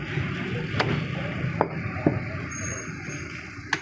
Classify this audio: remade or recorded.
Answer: recorded